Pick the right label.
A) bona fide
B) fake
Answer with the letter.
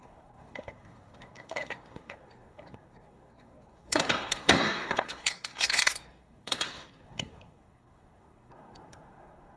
B